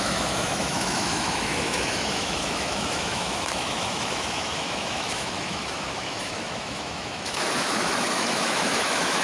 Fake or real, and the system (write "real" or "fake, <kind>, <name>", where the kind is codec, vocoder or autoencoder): fake, autoencoder, DAC-VAE